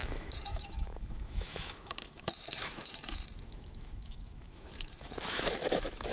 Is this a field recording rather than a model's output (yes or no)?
no